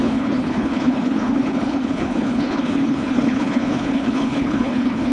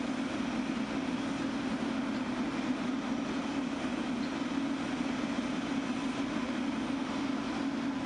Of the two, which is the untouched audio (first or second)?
second